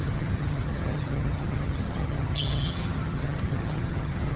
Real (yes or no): no